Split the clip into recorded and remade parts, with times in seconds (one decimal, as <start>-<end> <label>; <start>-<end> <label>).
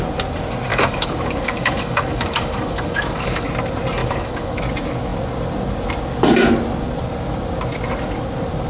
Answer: 0.0-0.7 recorded; 0.7-3.5 remade; 3.5-4.0 recorded; 4.0-4.6 remade; 4.6-8.7 recorded